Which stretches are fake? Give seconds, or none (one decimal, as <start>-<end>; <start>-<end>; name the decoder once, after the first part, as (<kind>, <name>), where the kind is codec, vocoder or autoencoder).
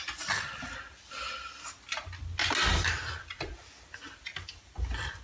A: 2.7-5.2 (vocoder, BigVGAN v2)